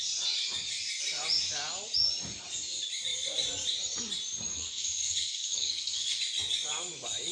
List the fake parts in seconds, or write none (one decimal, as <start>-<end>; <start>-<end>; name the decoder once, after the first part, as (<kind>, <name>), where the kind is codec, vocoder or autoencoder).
4.5-6.2 (codec, SNAC)